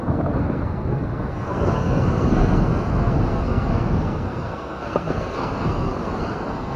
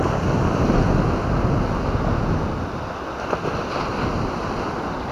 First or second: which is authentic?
second